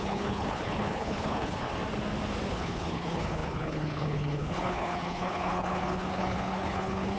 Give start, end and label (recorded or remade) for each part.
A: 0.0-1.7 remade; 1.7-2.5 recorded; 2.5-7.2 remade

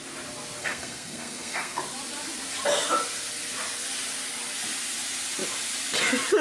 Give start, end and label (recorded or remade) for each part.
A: 0.0-0.6 recorded; 0.6-1.8 remade; 1.8-6.4 recorded

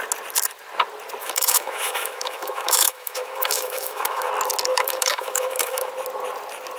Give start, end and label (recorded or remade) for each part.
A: 0.0-1.2 recorded; 1.2-4.3 remade; 4.3-4.7 recorded; 4.7-5.9 remade; 5.9-6.8 recorded

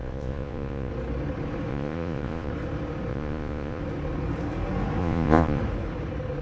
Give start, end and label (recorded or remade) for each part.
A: 0.0-0.9 remade; 0.9-1.7 recorded; 1.7-2.5 remade; 2.5-3.1 recorded; 3.1-3.8 remade; 3.8-5.0 recorded; 5.0-5.6 remade; 5.6-6.4 recorded

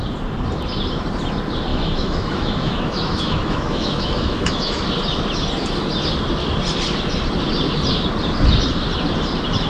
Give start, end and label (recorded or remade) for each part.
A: 0.0-1.7 recorded; 1.7-4.8 remade; 4.8-9.7 recorded